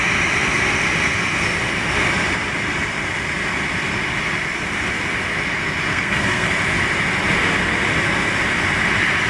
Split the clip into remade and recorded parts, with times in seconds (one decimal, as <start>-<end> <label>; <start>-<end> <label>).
0.0-5.9 recorded; 5.9-6.5 remade; 6.5-9.3 recorded